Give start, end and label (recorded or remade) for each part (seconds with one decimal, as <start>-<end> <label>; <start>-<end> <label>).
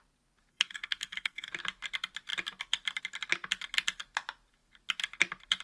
0.0-0.5 recorded; 0.5-1.5 remade; 1.5-5.6 recorded